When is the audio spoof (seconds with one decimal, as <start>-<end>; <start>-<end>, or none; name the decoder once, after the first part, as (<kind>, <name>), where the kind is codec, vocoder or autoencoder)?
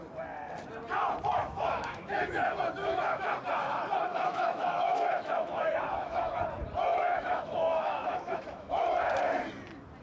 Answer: 1.4-2.4 (autoencoder, DAC-VAE); 2.8-3.3; 4.1-6.4; 6.9-9.1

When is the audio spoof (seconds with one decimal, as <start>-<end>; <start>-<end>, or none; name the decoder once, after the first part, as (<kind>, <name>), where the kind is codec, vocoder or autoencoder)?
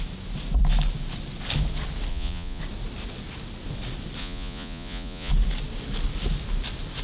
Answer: 2.1-2.6 (vocoder, Vocos); 4.2-5.3